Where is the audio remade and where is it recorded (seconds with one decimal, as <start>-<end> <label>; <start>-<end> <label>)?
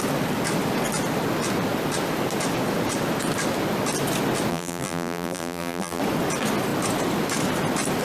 0.0-4.5 recorded; 4.5-6.0 remade; 6.0-8.0 recorded